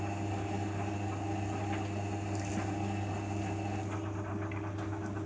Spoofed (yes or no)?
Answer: no